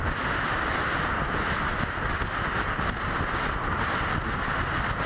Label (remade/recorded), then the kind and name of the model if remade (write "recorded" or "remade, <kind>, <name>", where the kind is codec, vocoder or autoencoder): remade, vocoder, BigVGAN v2